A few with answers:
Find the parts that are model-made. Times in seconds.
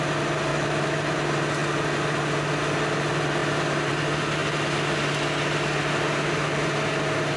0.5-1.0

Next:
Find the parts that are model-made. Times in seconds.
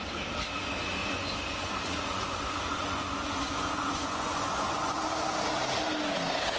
1.0-5.0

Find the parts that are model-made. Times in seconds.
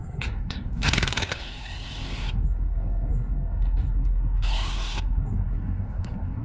0.0-6.4